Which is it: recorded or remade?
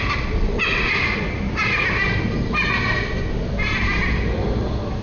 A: recorded